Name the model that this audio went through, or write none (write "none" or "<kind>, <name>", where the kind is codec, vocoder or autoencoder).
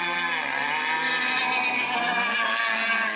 none